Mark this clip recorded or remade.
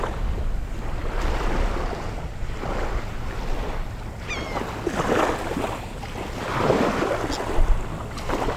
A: recorded